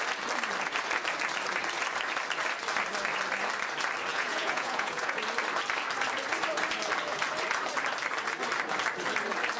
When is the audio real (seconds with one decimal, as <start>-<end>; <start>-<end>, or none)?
0.0-4.1; 5.2-9.6